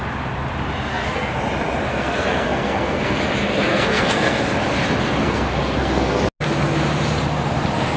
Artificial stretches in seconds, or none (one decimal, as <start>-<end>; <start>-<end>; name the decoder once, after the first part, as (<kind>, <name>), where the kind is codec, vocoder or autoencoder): 0.9-1.4 (codec, SNAC); 1.9-3.2; 3.7-4.4; 5.2-6.2